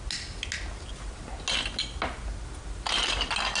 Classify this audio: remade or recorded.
recorded